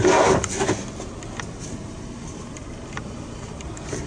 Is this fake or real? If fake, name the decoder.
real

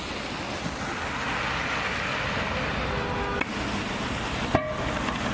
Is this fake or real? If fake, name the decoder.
real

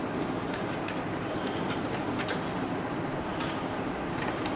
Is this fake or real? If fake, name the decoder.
real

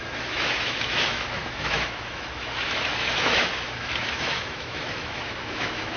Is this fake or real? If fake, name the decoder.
fake, autoencoder, DAC-VAE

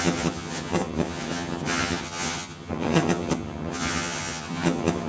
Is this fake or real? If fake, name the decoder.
fake, vocoder, HiFi-GAN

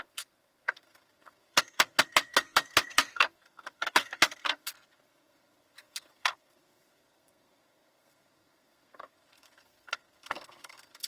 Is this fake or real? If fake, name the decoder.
fake, codec, SNAC